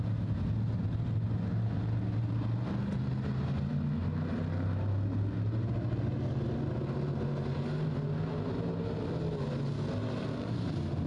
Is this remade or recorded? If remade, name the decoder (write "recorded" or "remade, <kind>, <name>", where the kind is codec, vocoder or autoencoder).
recorded